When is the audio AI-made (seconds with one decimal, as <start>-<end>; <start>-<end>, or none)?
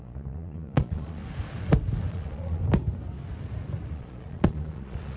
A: 0.0-1.2; 2.1-2.6; 3.9-5.2